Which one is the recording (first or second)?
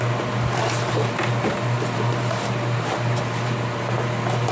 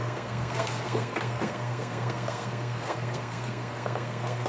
first